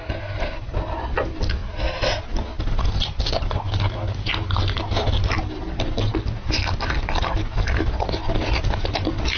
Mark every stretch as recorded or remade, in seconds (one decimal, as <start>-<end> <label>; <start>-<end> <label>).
0.0-9.4 recorded